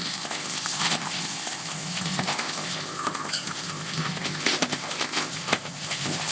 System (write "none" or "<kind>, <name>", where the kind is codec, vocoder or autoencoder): codec, ZipCodec